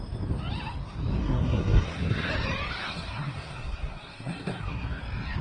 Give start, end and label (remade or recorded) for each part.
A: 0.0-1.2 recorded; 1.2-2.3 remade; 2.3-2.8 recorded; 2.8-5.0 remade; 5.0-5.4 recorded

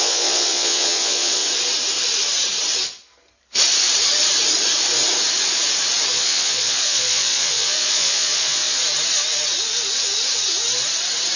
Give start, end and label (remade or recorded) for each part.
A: 0.0-1.4 remade; 1.4-6.1 recorded; 6.1-8.8 remade; 8.8-11.4 recorded

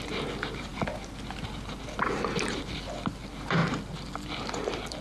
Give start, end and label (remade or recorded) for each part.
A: 0.0-5.0 recorded

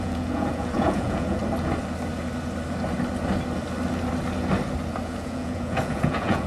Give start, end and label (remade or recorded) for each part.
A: 0.0-1.4 remade; 1.4-5.0 recorded; 5.0-6.5 remade

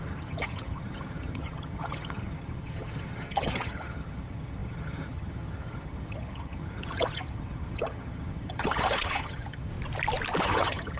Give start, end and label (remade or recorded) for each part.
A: 0.0-9.7 remade; 9.7-10.4 recorded; 10.4-11.0 remade

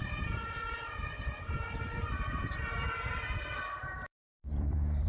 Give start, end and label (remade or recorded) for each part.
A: 0.0-3.1 remade; 3.1-4.1 recorded; 4.1-5.1 remade

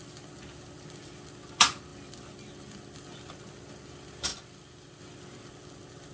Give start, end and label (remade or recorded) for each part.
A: 0.0-6.1 recorded